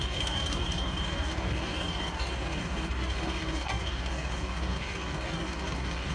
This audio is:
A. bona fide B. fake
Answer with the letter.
B